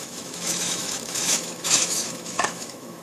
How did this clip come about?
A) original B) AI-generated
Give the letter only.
B